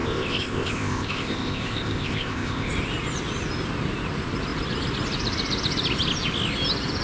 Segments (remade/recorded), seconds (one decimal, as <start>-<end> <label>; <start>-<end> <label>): 0.0-2.7 remade; 2.7-7.0 recorded